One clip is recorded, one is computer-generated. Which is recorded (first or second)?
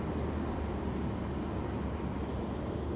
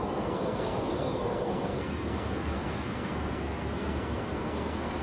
first